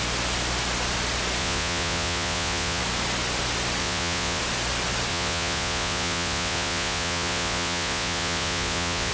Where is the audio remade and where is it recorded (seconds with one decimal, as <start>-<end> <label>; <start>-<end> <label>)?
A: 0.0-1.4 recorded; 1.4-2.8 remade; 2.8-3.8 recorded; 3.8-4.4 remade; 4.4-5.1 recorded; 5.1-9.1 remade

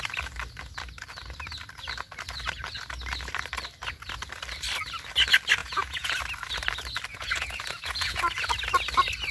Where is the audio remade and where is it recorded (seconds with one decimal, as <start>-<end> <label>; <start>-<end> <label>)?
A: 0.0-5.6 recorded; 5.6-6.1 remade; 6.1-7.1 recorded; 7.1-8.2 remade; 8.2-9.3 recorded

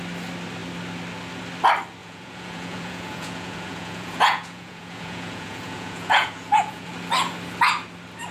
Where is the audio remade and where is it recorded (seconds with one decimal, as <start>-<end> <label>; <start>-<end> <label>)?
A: 0.0-2.0 recorded; 2.0-6.9 remade; 6.9-8.3 recorded

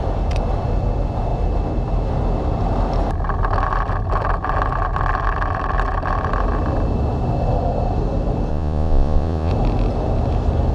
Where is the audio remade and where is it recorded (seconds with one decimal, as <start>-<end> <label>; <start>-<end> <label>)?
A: 0.0-8.5 recorded; 8.5-9.5 remade; 9.5-10.7 recorded

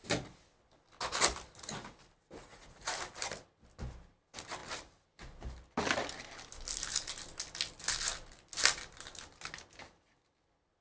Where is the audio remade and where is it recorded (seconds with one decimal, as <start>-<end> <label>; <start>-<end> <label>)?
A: 0.0-2.4 recorded; 2.4-2.9 remade; 2.9-10.8 recorded

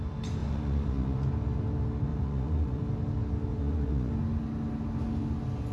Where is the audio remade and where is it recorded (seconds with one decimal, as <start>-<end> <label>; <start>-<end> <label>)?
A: 0.0-0.4 recorded; 0.4-1.3 remade; 1.3-2.1 recorded; 2.1-2.8 remade; 2.8-3.5 recorded; 3.5-4.1 remade; 4.1-5.7 recorded

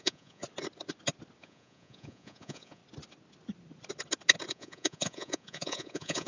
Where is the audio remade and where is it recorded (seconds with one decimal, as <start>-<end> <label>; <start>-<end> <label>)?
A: 0.0-0.4 remade; 0.4-1.4 recorded; 1.4-2.8 remade; 2.8-4.5 recorded; 4.5-6.3 remade

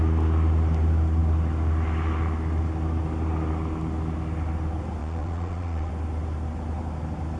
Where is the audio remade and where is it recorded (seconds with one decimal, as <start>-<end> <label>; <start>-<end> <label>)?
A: 0.0-5.0 recorded; 5.0-5.9 remade; 5.9-7.4 recorded